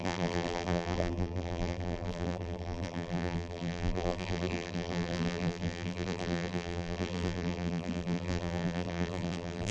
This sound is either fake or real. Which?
fake